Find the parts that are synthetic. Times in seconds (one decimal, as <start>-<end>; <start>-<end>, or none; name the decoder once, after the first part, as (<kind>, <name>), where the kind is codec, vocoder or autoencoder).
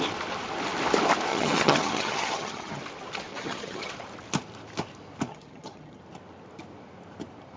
1.3-2.8 (vocoder, HiFi-GAN); 3.3-3.9; 5.3-6.0